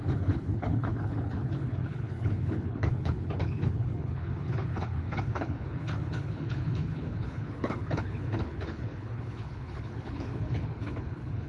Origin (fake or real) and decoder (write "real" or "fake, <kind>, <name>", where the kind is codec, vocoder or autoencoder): fake, codec, HILCodec